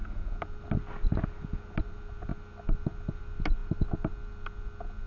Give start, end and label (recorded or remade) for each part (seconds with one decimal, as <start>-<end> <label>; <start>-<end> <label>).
0.0-5.1 recorded